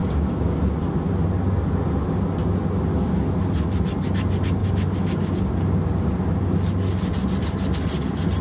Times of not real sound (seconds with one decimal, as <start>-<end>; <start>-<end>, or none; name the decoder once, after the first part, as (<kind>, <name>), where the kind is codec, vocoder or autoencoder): 0.0-0.6 (codec, DAC); 4.6-5.4